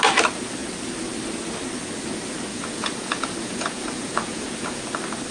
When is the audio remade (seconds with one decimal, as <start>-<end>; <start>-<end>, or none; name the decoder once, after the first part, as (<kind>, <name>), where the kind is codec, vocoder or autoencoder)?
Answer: 2.5-4.8 (vocoder, Vocos)